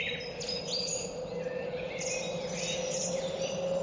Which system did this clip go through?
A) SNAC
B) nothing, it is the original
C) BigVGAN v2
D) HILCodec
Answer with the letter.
B